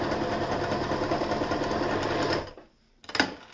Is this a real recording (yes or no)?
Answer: yes